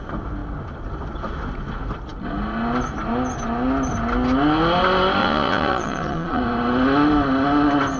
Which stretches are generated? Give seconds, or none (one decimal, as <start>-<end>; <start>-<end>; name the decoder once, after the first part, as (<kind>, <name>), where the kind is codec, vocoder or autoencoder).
5.2-6.4 (vocoder, Vocos)